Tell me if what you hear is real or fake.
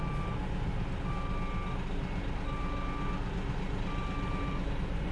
real